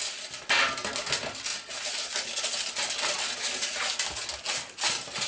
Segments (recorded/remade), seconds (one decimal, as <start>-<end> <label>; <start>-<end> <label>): 0.0-5.3 recorded